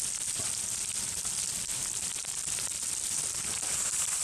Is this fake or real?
real